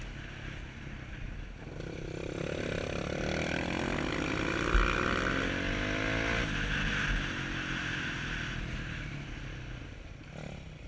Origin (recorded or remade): recorded